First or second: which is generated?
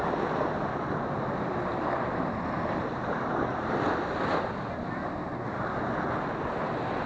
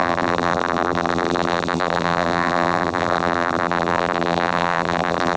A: second